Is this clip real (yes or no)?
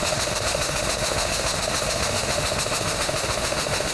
no